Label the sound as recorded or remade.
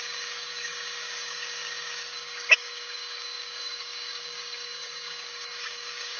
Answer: remade